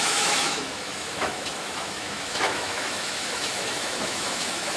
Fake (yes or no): yes